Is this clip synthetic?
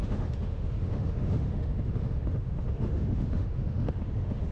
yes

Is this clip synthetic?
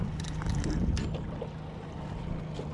no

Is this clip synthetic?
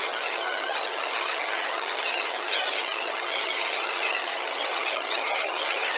yes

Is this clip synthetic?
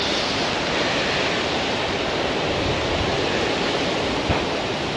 no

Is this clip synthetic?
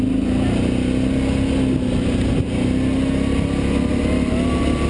no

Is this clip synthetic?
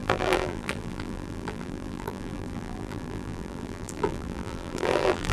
yes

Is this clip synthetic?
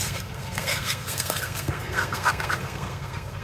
yes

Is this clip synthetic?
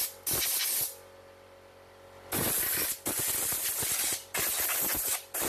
no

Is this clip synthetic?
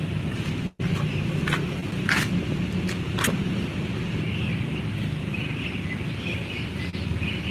no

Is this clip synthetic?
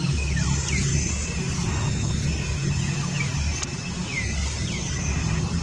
no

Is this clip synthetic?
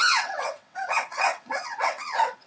yes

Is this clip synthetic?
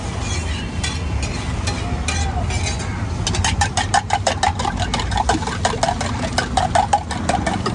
no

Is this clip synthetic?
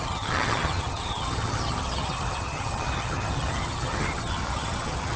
yes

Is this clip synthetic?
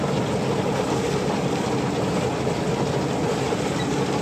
no